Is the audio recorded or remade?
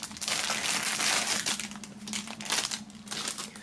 recorded